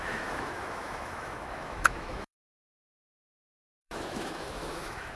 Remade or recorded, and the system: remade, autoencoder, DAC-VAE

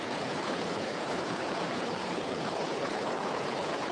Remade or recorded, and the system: remade, codec, HILCodec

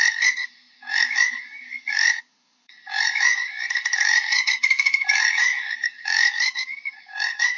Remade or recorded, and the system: remade, codec, DAC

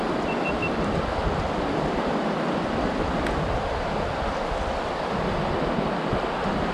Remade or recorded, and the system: recorded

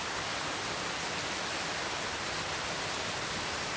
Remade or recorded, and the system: recorded